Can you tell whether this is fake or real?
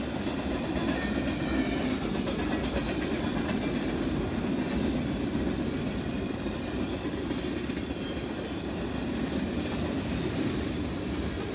real